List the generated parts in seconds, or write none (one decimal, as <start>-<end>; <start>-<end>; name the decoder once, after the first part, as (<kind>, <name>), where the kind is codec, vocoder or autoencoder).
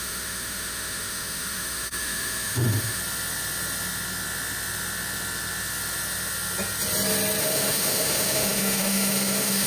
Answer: 0.0-3.0 (autoencoder, DAC-VAE); 7.4-9.7